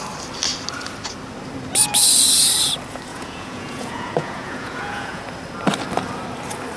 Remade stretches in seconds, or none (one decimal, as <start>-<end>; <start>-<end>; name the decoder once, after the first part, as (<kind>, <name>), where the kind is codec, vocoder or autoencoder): 3.1-5.2 (vocoder, Vocos)